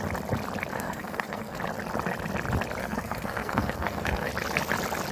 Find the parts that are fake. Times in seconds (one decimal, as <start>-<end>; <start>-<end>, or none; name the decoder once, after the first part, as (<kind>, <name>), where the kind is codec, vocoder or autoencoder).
0.7-1.6 (codec, SNAC); 2.8-4.3